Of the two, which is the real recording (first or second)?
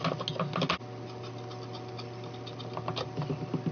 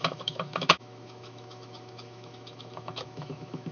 first